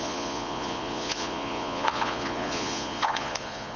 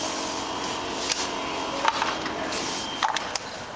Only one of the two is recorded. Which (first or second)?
second